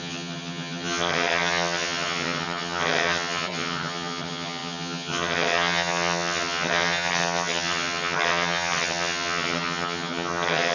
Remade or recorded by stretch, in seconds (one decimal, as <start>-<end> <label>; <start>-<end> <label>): 0.0-10.7 remade